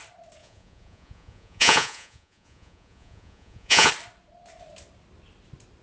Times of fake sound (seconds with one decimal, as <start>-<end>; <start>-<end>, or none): 0.4-3.9